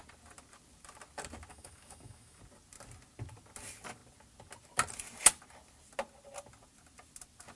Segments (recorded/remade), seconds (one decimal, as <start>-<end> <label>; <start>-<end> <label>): 0.0-1.5 recorded; 1.5-2.4 remade; 2.4-7.6 recorded